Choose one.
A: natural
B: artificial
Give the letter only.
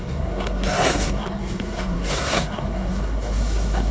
B